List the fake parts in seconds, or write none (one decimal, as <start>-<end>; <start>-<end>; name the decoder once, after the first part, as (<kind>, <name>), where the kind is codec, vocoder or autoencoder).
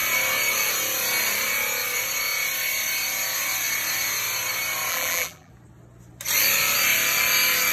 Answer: 4.9-5.5 (vocoder, BigVGAN v2)